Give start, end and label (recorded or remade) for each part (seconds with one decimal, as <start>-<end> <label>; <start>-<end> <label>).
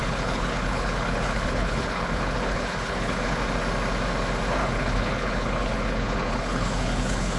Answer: 0.0-3.4 remade; 3.4-4.6 recorded; 4.6-7.4 remade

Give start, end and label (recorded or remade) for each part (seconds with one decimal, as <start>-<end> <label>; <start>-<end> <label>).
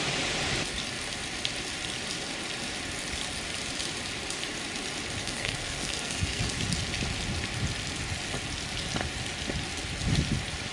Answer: 0.0-5.2 recorded; 5.2-6.4 remade; 6.4-10.7 recorded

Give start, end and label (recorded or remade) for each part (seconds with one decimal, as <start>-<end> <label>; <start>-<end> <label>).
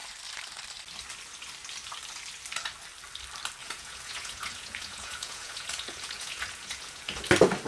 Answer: 0.0-3.6 recorded; 3.6-7.3 remade; 7.3-7.7 recorded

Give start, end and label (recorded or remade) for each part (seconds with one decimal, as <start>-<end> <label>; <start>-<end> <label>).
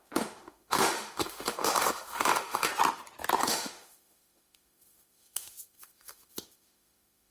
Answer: 0.0-2.7 remade; 2.7-3.4 recorded; 3.4-7.3 remade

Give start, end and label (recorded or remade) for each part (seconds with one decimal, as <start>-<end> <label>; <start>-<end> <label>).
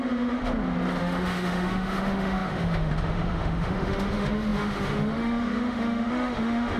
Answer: 0.0-0.4 remade; 0.4-1.0 recorded; 1.0-6.8 remade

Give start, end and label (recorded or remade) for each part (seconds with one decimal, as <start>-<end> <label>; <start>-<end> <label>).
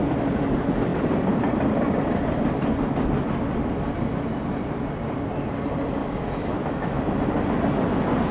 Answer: 0.0-6.0 recorded; 6.0-7.0 remade; 7.0-8.3 recorded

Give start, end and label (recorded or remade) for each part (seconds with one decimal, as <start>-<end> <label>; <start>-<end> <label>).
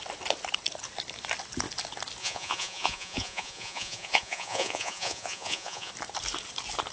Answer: 0.0-2.2 recorded; 2.2-5.9 remade; 5.9-6.9 recorded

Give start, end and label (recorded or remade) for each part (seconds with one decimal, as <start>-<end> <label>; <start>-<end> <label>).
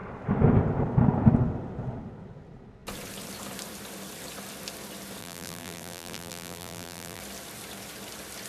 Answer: 0.0-5.2 recorded; 5.2-7.2 remade; 7.2-8.5 recorded